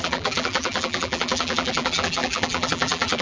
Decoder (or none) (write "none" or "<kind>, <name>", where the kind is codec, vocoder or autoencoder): vocoder, BigVGAN v2